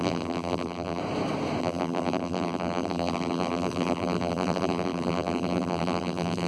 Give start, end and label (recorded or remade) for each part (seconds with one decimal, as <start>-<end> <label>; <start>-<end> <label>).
0.0-1.0 remade; 1.0-1.6 recorded; 1.6-6.5 remade